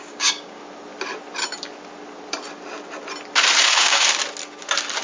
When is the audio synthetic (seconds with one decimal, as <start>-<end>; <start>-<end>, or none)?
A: 0.0-0.6; 3.6-4.1